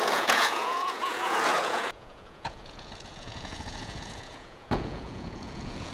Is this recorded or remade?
remade